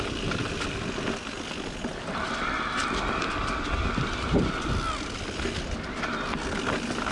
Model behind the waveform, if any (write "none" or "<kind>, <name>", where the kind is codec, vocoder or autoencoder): none